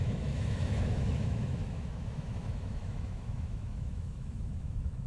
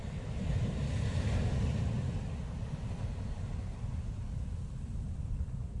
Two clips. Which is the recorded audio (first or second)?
second